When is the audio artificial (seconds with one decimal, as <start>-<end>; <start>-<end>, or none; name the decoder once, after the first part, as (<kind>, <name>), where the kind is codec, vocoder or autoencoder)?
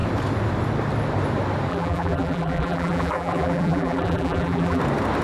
1.7-4.8 (vocoder, BigVGAN v2)